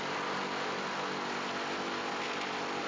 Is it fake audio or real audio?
real